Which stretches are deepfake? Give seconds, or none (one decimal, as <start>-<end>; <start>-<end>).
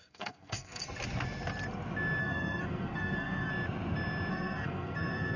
0.0-0.8; 2.2-3.5; 4.3-5.4